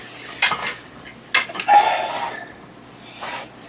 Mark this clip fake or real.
real